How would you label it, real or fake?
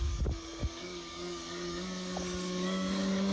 fake